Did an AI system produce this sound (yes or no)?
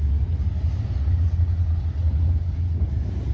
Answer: no